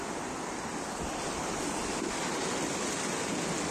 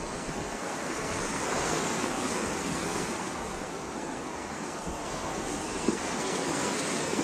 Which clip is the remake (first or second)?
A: second